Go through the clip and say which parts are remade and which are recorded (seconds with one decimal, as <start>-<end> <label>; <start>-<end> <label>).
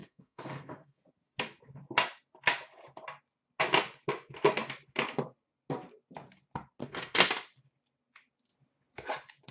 0.0-1.0 remade; 1.0-6.8 recorded; 6.8-7.3 remade; 7.3-9.5 recorded